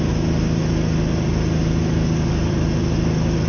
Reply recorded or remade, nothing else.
recorded